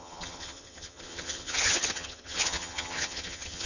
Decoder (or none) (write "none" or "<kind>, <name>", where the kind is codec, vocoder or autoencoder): vocoder, HiFi-GAN